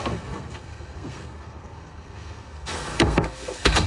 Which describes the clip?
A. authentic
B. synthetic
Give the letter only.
B